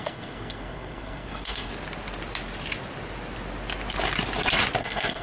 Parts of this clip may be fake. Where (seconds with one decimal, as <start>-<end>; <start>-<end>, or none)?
0.0-1.7; 4.8-5.2